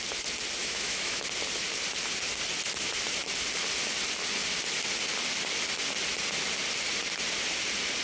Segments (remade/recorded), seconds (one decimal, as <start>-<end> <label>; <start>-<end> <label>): 0.0-0.6 recorded; 0.6-1.2 remade; 1.2-8.0 recorded